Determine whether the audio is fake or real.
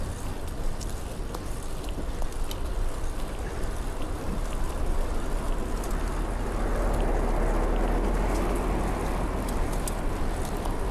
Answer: real